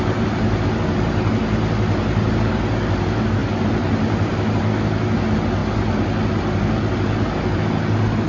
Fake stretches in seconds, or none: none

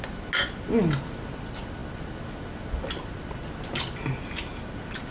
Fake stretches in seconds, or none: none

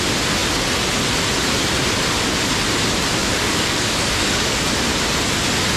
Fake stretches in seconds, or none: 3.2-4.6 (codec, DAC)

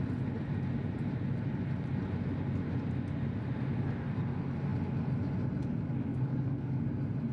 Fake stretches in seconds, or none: 6.1-6.8 (codec, DAC)

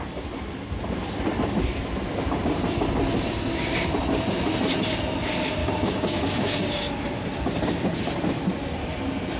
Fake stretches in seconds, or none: 5.6-6.9 (codec, DAC)

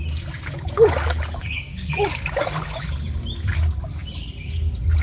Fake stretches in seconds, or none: 1.4-2.1 (codec, DAC)

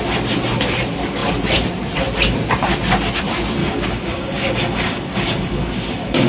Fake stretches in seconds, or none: 3.6-6.3 (codec, DAC)